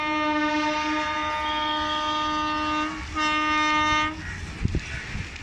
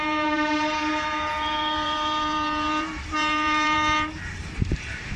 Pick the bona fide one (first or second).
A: first